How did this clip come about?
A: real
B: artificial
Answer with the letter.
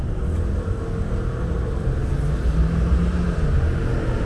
A